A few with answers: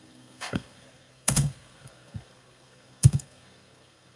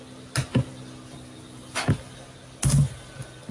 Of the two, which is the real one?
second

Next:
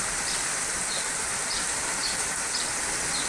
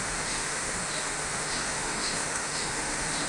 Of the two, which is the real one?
first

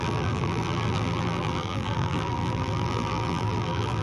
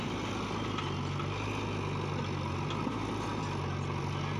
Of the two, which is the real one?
second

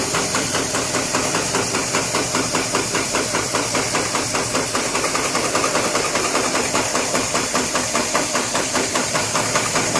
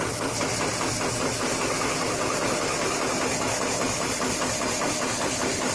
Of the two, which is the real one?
second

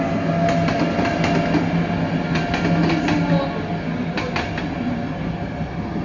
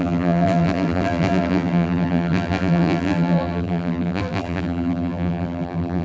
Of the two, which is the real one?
first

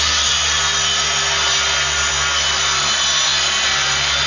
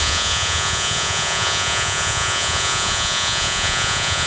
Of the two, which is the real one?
first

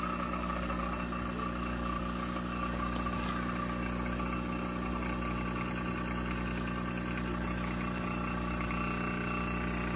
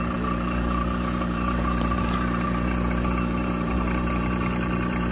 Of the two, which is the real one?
first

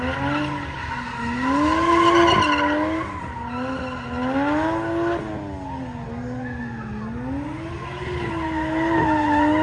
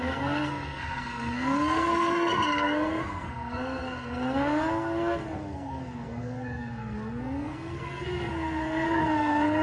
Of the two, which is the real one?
first